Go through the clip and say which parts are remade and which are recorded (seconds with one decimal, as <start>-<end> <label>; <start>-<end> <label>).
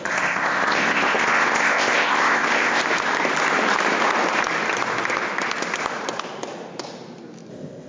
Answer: 0.0-2.8 remade; 2.8-7.5 recorded; 7.5-7.9 remade